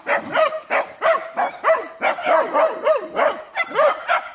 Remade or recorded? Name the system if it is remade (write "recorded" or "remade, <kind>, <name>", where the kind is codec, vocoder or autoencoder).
recorded